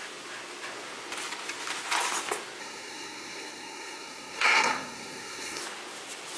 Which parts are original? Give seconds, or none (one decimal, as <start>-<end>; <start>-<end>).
0.0-2.6; 5.6-6.4